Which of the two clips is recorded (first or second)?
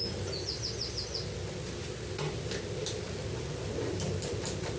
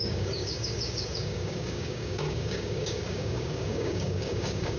first